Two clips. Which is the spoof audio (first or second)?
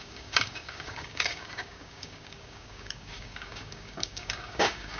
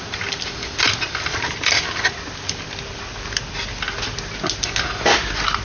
first